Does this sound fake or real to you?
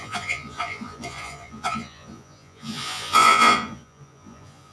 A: fake